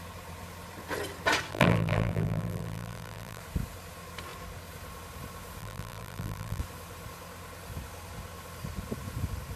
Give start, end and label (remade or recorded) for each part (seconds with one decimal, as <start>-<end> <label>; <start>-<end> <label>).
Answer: 0.0-1.5 recorded; 1.5-3.4 remade; 3.4-5.6 recorded; 5.6-6.6 remade; 6.6-9.6 recorded